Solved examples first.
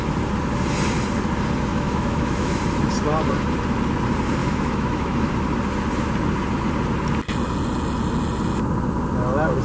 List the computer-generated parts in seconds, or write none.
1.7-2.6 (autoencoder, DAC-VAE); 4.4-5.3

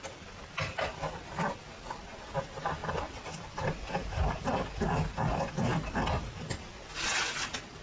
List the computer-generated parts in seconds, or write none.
none

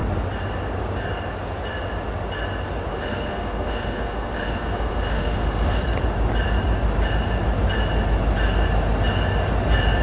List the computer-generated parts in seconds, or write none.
2.9-5.8 (autoencoder, DAC-VAE)

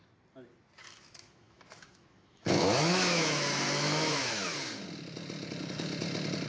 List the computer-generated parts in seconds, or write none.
0.8-4.7 (autoencoder, DAC-VAE)

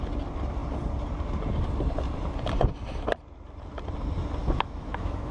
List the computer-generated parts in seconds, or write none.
4.4-5.3 (autoencoder, DAC-VAE)

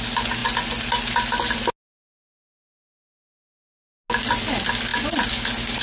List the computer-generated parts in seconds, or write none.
none

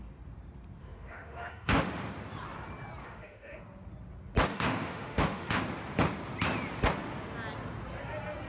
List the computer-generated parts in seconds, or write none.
0.8-1.9 (autoencoder, DAC-VAE); 3.0-3.6; 4.5-5.6

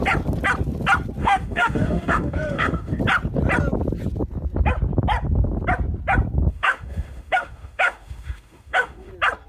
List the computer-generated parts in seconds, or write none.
1.2-3.0 (autoencoder, DAC-VAE); 6.5-9.1